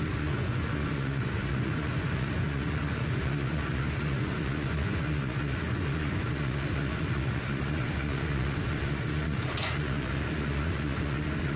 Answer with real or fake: fake